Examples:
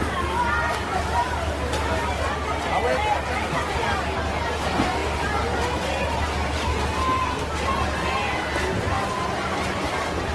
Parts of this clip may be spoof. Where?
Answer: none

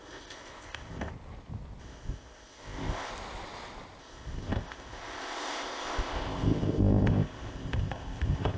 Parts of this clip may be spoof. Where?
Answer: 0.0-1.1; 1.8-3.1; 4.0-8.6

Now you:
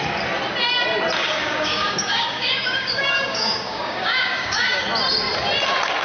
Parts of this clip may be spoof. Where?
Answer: 1.2-4.8